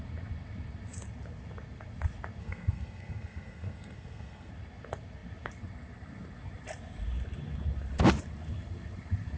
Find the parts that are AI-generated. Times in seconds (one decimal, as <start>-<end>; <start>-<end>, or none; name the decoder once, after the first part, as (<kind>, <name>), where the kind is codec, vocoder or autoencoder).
2.4-4.5 (codec, SNAC)